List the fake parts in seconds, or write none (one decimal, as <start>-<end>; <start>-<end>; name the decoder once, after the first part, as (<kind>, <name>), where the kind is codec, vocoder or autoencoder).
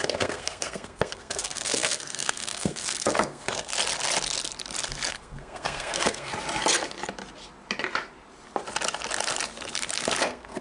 0.0-3.7 (codec, SNAC); 5.1-6.3; 10.2-10.6